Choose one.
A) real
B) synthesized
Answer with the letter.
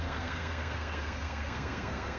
B